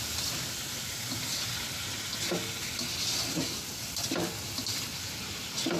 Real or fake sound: real